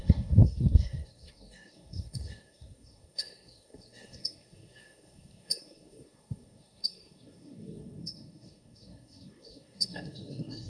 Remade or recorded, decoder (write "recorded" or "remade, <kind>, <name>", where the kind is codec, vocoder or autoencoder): remade, codec, SNAC